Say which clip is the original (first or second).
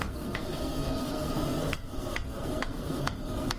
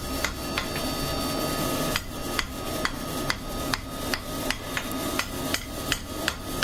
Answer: second